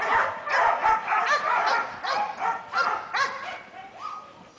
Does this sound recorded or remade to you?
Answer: recorded